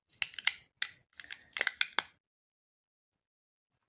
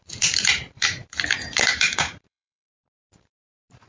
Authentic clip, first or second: first